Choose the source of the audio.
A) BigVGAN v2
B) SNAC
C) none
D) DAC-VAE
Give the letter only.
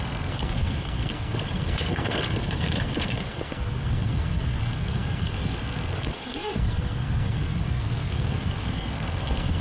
B